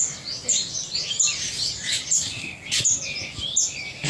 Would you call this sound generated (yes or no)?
no